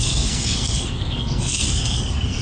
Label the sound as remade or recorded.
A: remade